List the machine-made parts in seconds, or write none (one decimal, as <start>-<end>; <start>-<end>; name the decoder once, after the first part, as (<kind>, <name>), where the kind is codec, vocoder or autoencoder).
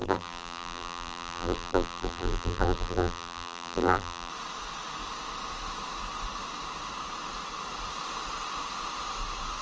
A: 0.0-4.3 (vocoder, BigVGAN v2)